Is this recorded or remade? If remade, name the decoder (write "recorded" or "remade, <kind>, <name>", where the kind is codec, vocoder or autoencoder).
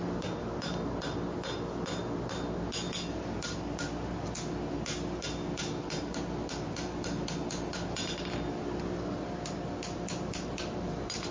recorded